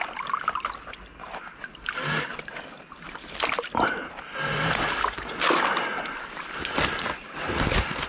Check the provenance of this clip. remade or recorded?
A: recorded